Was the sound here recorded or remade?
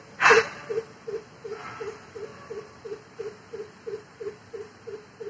remade